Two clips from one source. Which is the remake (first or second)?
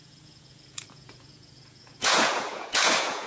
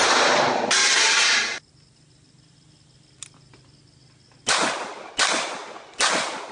first